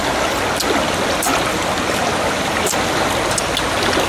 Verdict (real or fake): real